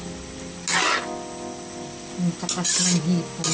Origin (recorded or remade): recorded